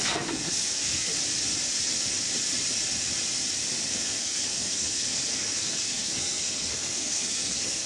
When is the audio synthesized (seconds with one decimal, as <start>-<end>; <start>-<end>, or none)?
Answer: 0.0-1.1; 3.7-7.9